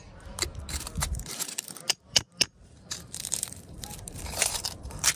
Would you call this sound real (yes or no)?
no